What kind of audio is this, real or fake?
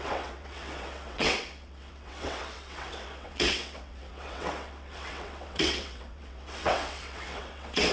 fake